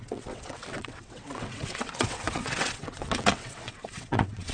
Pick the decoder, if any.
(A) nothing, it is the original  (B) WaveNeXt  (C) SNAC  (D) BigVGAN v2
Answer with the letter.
B